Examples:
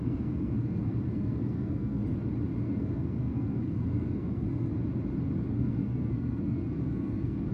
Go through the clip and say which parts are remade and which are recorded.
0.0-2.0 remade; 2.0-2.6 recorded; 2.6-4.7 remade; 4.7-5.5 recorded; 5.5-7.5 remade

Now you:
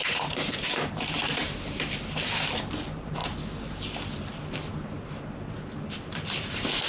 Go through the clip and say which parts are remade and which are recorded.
0.0-3.2 remade; 3.2-6.0 recorded; 6.0-6.9 remade

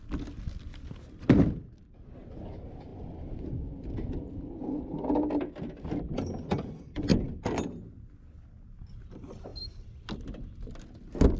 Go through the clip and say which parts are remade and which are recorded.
0.0-11.4 recorded

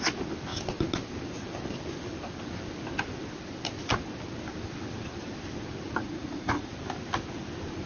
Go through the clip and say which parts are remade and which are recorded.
0.0-6.0 recorded; 6.0-6.7 remade; 6.7-7.9 recorded